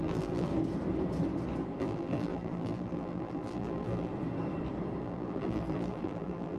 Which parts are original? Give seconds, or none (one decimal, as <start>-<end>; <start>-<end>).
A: 0.5-1.8; 4.1-5.0